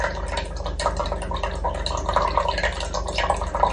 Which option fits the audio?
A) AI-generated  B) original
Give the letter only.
B